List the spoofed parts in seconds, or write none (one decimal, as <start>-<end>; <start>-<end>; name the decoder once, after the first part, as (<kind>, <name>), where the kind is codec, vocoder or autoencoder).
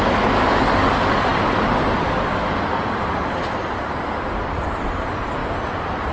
none